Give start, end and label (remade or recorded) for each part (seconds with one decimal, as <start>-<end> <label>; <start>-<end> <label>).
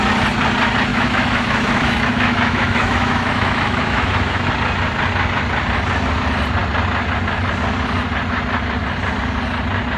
0.0-0.9 recorded; 0.9-4.5 remade; 4.5-10.0 recorded